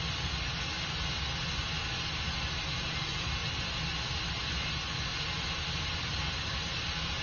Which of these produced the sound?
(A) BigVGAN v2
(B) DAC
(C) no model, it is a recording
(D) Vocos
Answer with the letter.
C